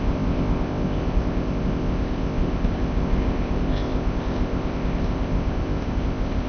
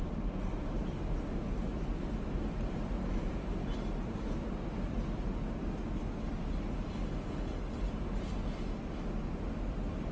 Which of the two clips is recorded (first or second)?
second